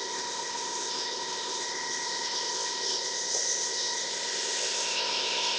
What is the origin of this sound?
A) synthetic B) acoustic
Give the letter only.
A